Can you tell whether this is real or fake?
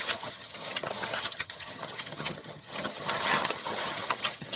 fake